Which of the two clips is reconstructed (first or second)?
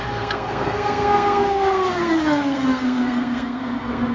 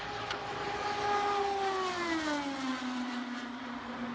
first